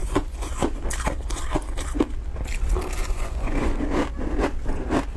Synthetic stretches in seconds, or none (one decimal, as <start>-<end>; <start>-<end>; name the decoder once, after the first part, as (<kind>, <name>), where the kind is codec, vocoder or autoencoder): 0.0-0.8 (vocoder, Vocos); 3.0-3.8